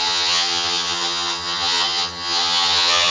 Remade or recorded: remade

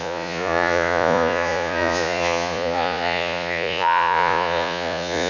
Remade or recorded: remade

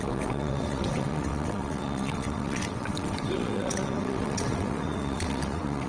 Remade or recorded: remade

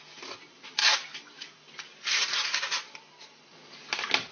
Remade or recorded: recorded